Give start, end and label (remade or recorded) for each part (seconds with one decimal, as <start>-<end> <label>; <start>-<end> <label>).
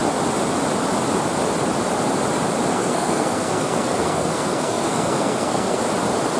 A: 0.0-2.7 recorded; 2.7-5.8 remade; 5.8-6.4 recorded